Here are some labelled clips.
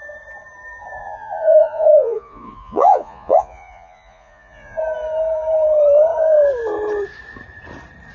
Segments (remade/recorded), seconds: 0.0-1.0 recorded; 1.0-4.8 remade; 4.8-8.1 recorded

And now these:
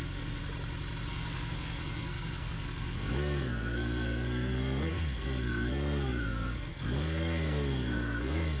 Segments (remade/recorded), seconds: 0.0-0.4 remade; 0.4-1.1 recorded; 1.1-8.6 remade

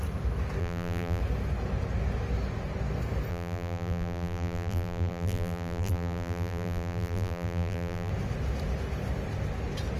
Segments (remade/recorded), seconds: 0.0-0.6 recorded; 0.6-1.2 remade; 1.2-3.3 recorded; 3.3-8.1 remade; 8.1-10.0 recorded

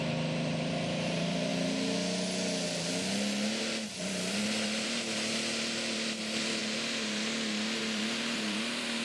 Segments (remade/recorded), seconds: 0.0-1.5 remade; 1.5-3.6 recorded; 3.6-6.6 remade; 6.6-7.8 recorded; 7.8-9.0 remade

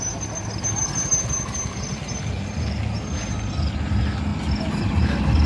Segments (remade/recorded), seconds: 0.0-5.5 recorded

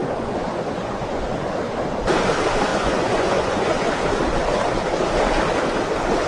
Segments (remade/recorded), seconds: 0.0-1.5 remade; 1.5-2.7 recorded; 2.7-3.9 remade; 3.9-6.3 recorded

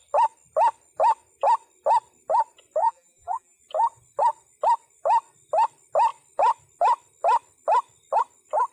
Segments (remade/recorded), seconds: 0.0-2.8 recorded; 2.8-3.6 remade; 3.6-8.7 recorded